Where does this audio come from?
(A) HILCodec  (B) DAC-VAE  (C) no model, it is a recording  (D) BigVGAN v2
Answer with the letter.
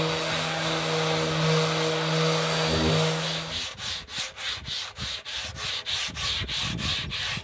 C